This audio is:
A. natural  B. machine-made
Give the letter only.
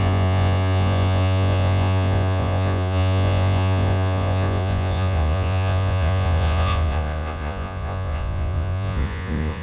B